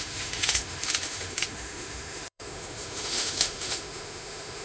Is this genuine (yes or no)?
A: no